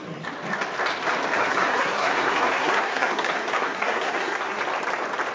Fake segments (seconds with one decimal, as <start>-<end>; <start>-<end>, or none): 1.4-4.6